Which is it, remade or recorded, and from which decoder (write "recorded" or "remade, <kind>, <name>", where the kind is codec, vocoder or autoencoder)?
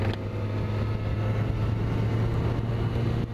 recorded